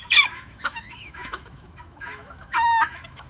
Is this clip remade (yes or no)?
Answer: yes